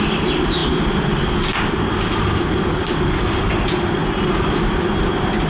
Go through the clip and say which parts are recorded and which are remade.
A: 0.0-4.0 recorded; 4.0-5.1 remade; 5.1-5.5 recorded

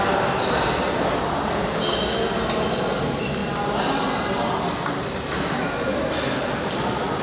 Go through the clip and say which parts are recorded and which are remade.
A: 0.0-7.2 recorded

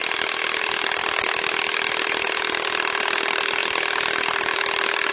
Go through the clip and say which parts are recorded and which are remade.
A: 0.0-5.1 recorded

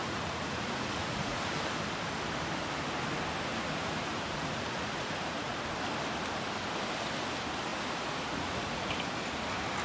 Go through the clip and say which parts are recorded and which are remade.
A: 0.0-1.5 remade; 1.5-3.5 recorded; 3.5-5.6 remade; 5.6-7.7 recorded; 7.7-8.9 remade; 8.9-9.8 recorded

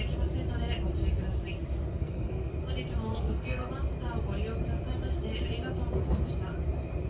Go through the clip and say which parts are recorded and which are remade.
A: 0.0-2.0 recorded; 2.0-2.5 remade; 2.5-3.1 recorded; 3.1-3.7 remade; 3.7-7.1 recorded

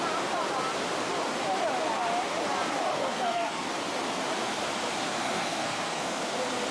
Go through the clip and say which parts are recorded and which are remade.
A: 0.0-2.9 recorded; 2.9-3.7 remade; 3.7-5.1 recorded; 5.1-6.3 remade; 6.3-6.7 recorded